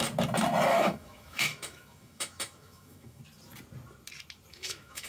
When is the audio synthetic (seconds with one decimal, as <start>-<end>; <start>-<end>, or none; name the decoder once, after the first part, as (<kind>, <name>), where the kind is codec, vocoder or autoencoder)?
0.7-3.2 (autoencoder, DAC-VAE); 4.5-5.1